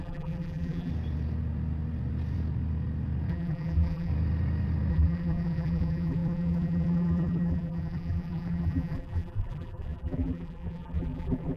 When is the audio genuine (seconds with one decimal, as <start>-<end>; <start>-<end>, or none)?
0.9-3.3; 4.1-4.9